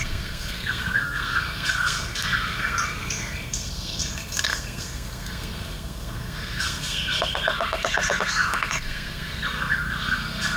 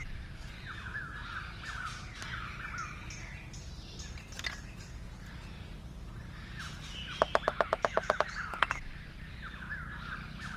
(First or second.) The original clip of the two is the second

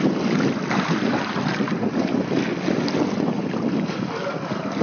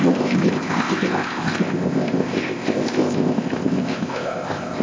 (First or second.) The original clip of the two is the first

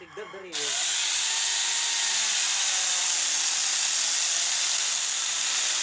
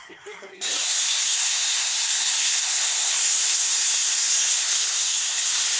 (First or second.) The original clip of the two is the first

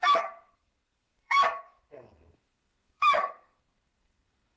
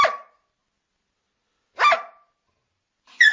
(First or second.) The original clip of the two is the second